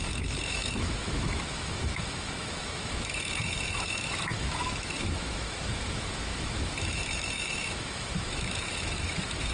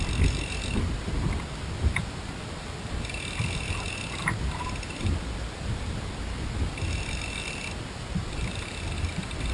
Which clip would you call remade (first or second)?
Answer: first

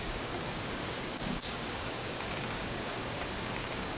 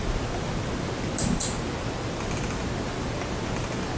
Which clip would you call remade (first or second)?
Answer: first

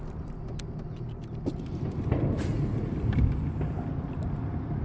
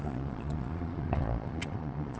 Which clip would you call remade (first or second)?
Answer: second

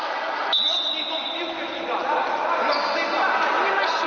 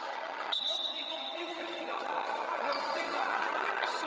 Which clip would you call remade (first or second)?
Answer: second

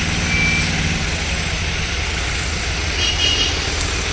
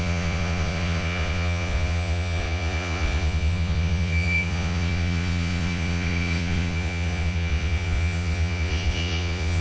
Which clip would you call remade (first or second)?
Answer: second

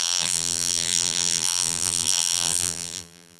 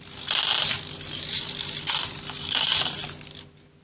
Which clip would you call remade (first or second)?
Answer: first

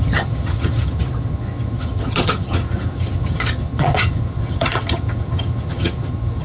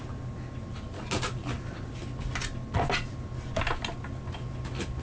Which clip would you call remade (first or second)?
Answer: first